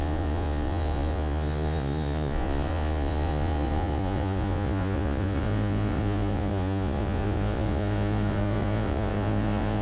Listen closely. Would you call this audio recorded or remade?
remade